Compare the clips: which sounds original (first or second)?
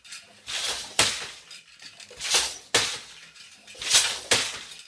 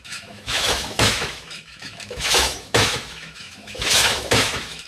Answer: first